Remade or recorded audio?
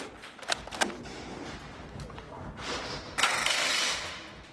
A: recorded